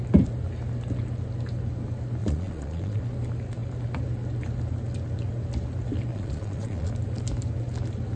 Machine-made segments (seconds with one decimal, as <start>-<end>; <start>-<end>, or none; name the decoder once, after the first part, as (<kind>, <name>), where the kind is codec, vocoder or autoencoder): 2.2-3.0 (vocoder, Vocos); 6.1-6.9